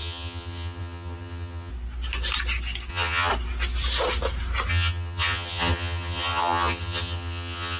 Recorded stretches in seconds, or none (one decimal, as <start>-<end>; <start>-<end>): 1.7-2.9; 3.3-4.7